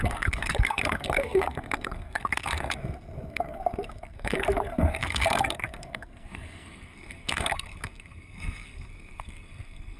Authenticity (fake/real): fake